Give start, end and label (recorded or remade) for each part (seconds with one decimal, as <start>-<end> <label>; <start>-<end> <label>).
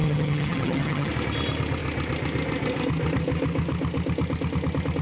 0.0-1.1 remade; 1.1-5.0 recorded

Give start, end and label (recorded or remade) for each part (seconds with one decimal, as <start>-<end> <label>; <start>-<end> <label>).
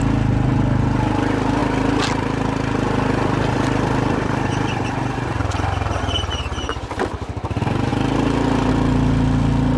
0.0-7.9 recorded; 7.9-8.7 remade; 8.7-9.8 recorded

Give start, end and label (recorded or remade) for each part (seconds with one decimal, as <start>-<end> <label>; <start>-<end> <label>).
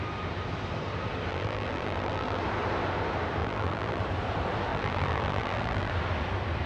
0.0-1.3 recorded; 1.3-2.4 remade; 2.4-3.4 recorded; 3.4-4.0 remade; 4.0-4.7 recorded; 4.7-5.9 remade; 5.9-6.7 recorded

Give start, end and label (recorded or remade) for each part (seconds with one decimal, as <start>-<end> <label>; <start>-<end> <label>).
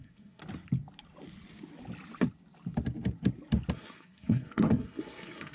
0.0-0.4 remade; 0.4-3.7 recorded; 3.7-5.5 remade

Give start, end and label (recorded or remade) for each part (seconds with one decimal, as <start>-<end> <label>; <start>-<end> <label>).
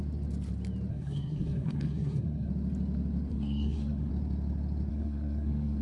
0.0-0.9 recorded; 0.9-2.5 remade; 2.5-3.3 recorded; 3.3-4.1 remade; 4.1-4.9 recorded; 4.9-5.8 remade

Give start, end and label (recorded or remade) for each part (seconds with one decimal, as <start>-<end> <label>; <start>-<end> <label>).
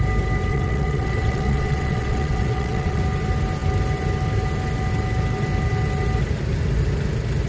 0.0-0.5 recorded; 0.5-3.0 remade; 3.0-7.5 recorded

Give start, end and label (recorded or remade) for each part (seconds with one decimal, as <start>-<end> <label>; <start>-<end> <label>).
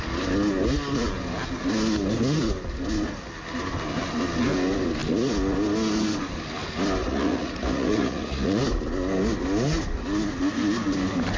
0.0-7.0 recorded; 7.0-8.6 remade; 8.6-11.4 recorded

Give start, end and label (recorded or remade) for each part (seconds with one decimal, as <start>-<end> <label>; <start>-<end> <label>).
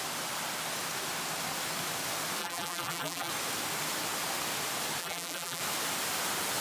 0.0-2.4 recorded; 2.4-3.3 remade; 3.3-5.0 recorded; 5.0-5.6 remade; 5.6-6.6 recorded